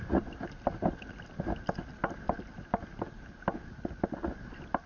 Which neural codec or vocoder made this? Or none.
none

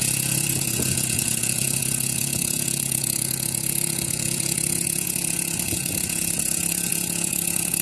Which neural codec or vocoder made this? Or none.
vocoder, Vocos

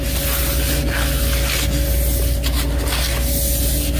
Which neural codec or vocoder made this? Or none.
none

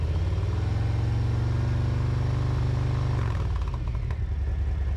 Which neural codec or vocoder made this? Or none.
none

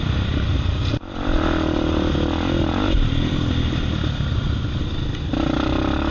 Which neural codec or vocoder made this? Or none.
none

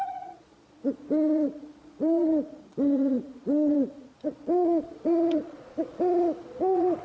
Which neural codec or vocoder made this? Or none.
vocoder, Vocos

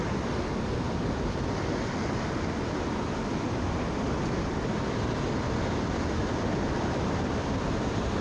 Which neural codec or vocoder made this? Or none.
none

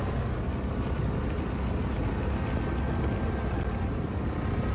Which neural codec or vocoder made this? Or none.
none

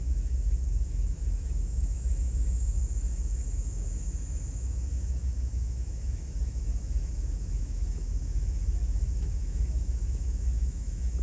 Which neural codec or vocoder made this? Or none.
autoencoder, DAC-VAE